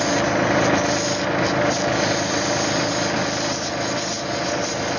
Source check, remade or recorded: recorded